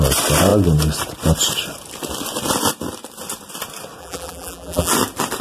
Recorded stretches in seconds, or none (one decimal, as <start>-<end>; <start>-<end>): 0.0-4.0; 4.9-5.4